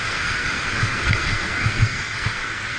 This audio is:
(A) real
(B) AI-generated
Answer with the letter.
B